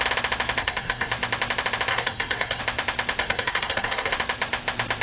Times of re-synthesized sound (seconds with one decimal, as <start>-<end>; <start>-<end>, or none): 0.6-1.1; 1.9-2.6; 3.2-4.1